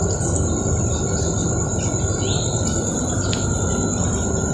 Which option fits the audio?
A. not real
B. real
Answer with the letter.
B